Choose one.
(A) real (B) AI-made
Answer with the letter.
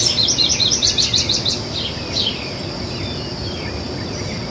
A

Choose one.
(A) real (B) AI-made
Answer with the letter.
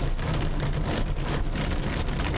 A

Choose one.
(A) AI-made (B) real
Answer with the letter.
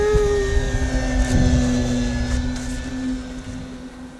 B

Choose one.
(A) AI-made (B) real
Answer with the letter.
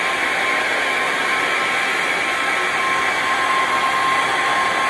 B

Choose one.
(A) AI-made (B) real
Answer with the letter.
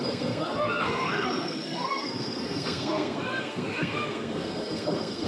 A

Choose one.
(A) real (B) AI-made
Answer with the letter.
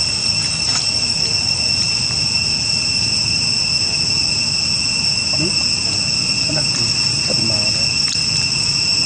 A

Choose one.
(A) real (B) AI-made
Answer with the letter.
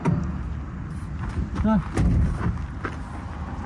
A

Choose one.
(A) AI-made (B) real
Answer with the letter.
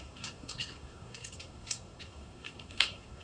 A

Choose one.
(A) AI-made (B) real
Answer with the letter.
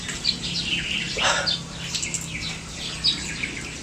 B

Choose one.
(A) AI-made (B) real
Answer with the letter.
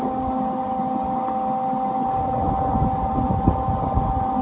B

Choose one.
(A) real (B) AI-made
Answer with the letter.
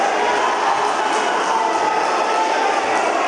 A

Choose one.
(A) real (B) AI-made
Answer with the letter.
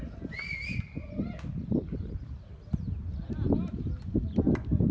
A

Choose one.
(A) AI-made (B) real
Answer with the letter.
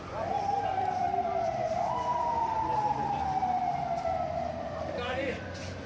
B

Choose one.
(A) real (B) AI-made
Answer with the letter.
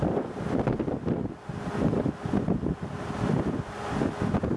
A